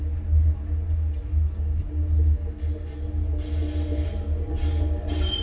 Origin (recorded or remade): recorded